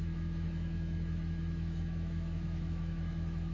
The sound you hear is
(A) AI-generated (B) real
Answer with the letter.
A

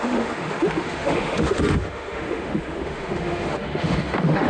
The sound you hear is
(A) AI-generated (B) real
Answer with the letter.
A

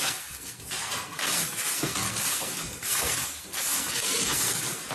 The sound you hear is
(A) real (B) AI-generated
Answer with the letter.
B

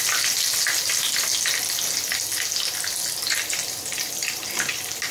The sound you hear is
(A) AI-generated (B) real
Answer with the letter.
B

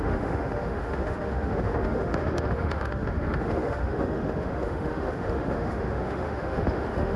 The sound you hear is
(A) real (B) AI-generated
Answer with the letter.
B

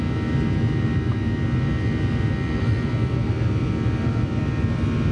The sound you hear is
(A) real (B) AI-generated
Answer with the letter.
A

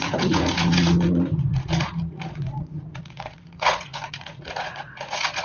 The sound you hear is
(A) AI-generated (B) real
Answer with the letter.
A